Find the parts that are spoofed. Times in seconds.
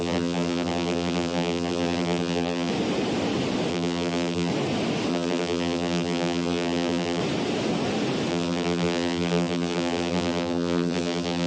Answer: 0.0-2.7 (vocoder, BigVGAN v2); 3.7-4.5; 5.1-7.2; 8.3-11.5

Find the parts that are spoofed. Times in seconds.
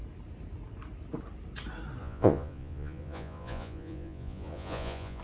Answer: 2.0-5.2 (vocoder, Vocos)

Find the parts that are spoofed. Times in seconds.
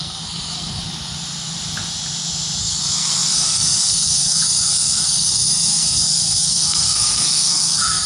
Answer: 0.0-0.8 (codec, SNAC); 2.6-8.1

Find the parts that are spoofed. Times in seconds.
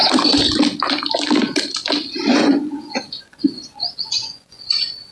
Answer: 2.3-5.1 (vocoder, Vocos)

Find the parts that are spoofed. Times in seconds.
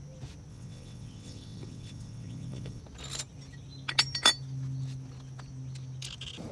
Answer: 0.5-2.8 (vocoder, WaveNeXt)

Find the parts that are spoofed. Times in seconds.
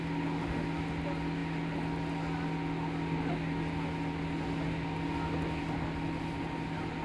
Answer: none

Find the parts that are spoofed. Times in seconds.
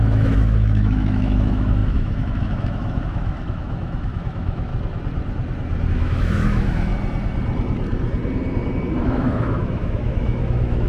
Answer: 0.0-4.7 (autoencoder, DAC-VAE); 5.9-6.9; 9.0-10.9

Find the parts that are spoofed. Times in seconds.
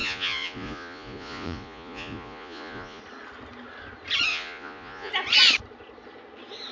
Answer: 0.0-3.0 (vocoder, Vocos); 4.3-5.1